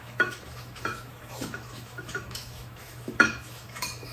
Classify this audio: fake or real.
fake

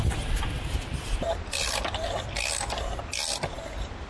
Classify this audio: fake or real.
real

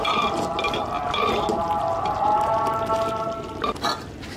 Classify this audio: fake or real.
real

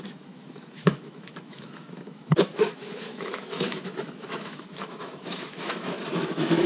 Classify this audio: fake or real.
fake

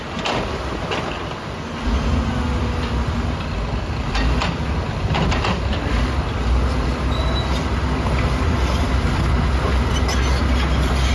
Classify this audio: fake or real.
real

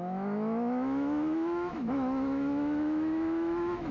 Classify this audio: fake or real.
fake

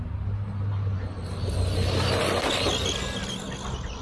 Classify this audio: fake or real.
real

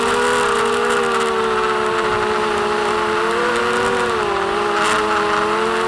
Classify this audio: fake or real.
real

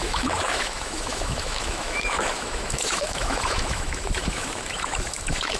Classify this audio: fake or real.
fake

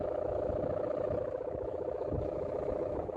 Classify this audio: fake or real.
fake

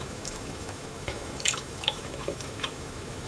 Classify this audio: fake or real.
fake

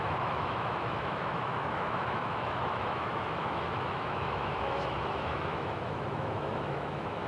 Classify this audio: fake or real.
fake